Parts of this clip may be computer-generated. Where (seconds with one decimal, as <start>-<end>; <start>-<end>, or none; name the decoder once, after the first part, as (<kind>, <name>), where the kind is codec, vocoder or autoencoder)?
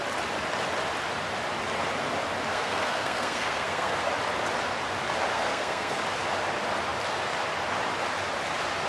2.5-4.0 (codec, SNAC); 5.3-6.0